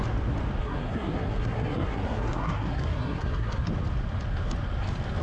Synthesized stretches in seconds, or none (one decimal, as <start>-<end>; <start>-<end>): 0.6-3.7